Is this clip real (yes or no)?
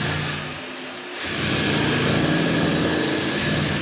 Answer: yes